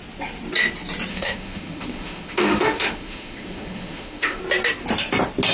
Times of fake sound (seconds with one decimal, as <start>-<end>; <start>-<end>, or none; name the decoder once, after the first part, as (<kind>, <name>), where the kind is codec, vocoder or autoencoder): 1.1-4.4 (autoencoder, DAC-VAE)